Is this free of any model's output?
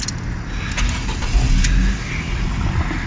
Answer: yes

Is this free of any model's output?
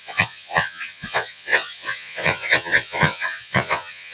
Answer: no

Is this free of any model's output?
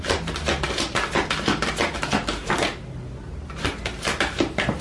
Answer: yes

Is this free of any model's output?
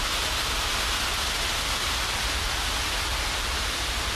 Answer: yes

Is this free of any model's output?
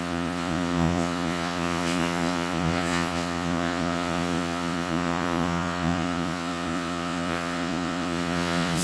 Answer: no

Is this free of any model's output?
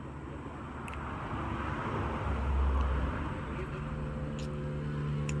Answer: yes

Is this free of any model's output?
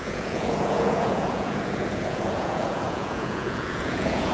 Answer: no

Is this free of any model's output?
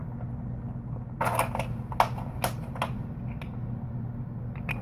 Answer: yes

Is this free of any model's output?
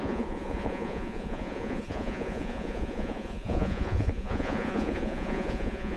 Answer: no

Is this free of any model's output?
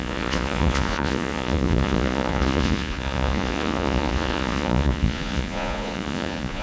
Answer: no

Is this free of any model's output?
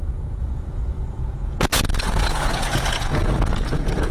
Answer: no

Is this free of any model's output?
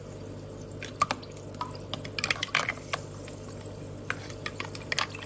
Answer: yes